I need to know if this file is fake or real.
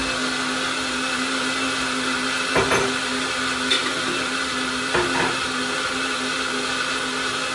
real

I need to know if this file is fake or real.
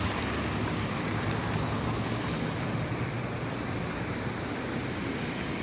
real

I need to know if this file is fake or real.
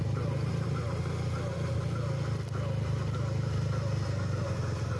real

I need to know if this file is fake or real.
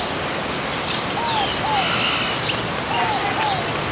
real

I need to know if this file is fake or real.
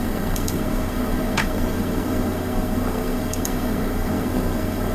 fake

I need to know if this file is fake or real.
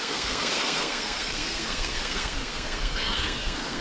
fake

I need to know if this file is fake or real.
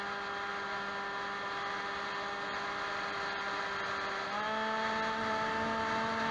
real